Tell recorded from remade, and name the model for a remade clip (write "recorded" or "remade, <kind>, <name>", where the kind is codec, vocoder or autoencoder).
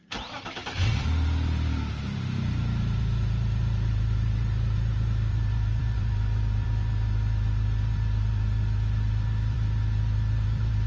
remade, vocoder, BigVGAN v2